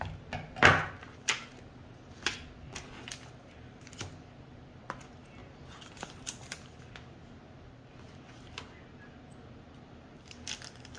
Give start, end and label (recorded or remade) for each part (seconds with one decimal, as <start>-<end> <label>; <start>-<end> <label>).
0.0-11.0 recorded